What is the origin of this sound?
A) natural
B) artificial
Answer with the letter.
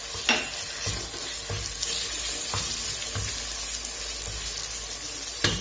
A